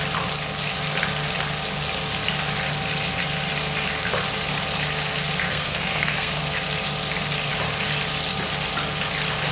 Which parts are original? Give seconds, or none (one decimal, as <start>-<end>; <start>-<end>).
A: 0.0-5.5; 6.4-9.5